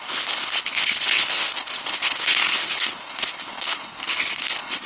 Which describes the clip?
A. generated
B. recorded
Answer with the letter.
A